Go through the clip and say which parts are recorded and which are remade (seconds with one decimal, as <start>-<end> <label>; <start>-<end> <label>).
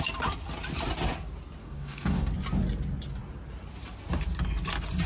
0.0-1.6 recorded; 1.6-2.3 remade; 2.3-5.1 recorded